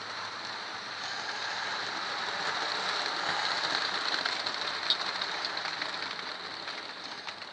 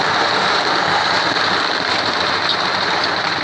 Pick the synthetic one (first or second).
second